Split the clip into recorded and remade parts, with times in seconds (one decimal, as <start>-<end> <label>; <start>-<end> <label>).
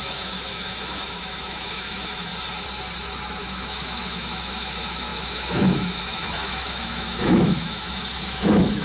0.0-2.3 remade; 2.3-3.4 recorded; 3.4-8.8 remade